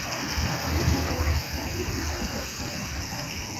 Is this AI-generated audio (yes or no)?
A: yes